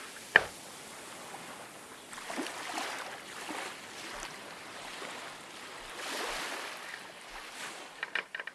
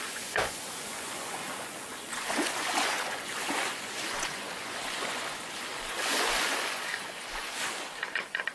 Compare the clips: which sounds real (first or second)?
first